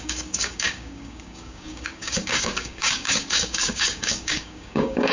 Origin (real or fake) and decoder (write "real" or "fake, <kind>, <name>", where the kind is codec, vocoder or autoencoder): fake, codec, DAC